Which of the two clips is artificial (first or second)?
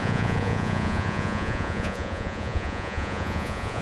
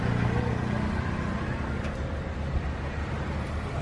first